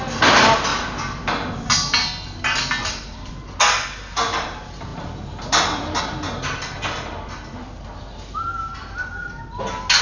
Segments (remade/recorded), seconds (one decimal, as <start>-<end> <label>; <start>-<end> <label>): 0.0-10.0 recorded